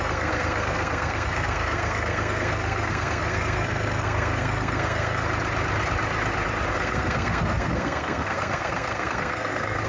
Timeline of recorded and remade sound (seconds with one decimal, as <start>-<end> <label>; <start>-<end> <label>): 0.0-5.2 remade; 5.2-6.7 recorded; 6.7-9.9 remade